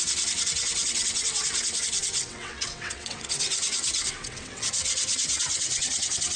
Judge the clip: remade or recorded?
remade